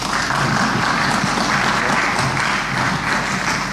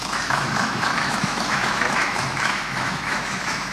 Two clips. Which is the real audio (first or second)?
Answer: first